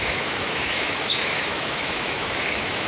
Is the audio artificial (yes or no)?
yes